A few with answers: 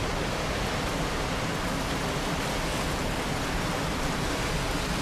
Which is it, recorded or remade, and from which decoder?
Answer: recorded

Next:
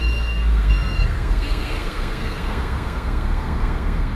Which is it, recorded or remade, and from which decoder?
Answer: remade, codec, SNAC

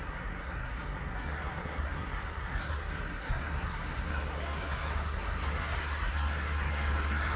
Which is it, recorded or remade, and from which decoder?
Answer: remade, codec, SNAC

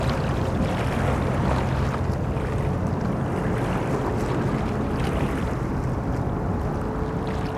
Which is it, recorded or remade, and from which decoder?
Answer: recorded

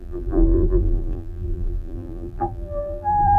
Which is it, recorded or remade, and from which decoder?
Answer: remade, vocoder, BigVGAN v2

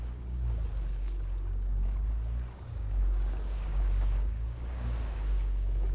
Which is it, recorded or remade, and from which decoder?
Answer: remade, codec, DAC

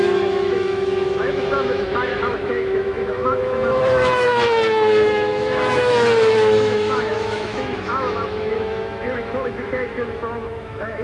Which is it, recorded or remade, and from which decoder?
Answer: remade, autoencoder, DAC-VAE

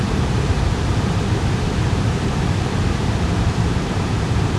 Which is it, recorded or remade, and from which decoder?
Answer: remade, vocoder, BigVGAN v2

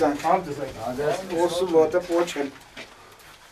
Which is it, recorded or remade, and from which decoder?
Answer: recorded